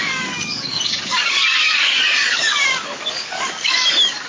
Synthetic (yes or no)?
yes